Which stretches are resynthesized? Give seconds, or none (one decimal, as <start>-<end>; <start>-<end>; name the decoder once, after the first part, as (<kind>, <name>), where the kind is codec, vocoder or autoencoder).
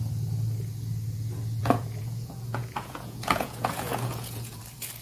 1.6-4.6 (vocoder, Vocos)